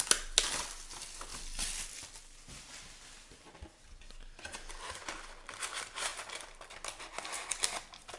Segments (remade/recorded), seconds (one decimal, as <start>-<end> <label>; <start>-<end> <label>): 0.0-8.2 recorded